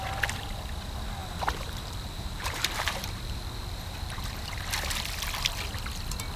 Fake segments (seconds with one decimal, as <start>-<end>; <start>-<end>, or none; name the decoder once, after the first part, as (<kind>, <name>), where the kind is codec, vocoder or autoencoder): 1.2-4.6 (vocoder, BigVGAN v2)